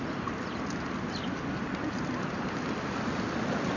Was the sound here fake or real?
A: real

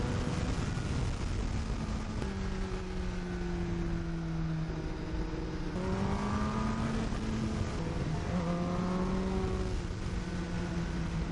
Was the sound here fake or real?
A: real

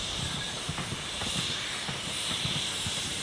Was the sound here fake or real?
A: fake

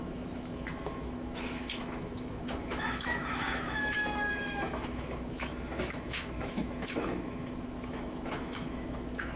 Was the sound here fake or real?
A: fake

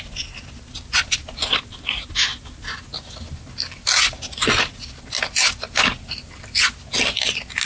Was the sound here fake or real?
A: real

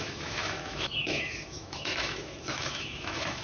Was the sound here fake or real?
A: fake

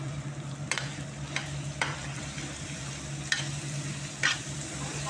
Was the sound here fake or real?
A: fake